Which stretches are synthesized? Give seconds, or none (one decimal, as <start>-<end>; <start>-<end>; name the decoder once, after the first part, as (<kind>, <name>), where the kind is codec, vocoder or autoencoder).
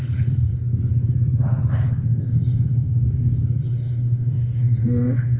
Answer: 0.0-0.5 (codec, SNAC); 1.7-5.4